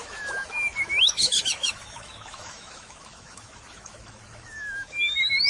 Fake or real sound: fake